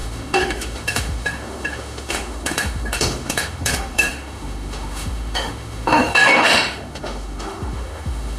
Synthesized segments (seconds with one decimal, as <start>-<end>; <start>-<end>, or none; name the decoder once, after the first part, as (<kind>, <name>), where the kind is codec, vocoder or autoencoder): 0.0-8.4 (autoencoder, DAC-VAE)